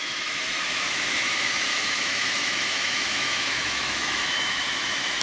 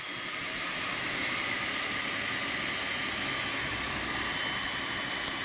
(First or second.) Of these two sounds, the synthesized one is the first